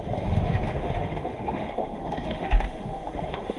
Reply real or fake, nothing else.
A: fake